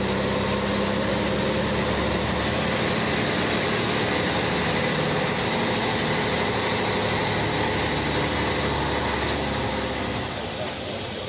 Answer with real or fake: real